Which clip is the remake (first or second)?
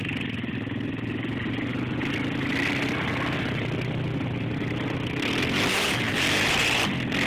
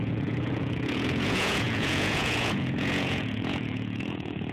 second